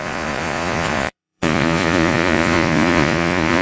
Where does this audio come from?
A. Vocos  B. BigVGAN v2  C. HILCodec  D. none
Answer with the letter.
A